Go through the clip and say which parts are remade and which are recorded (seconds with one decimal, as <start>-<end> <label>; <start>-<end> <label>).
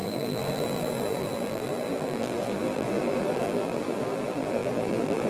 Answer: 0.0-5.3 remade